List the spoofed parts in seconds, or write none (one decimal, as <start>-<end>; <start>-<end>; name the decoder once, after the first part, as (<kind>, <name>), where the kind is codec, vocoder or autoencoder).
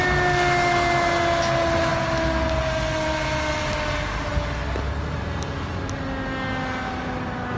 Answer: none